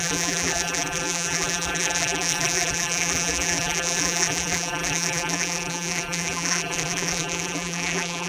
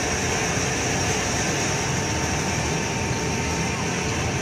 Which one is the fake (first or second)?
first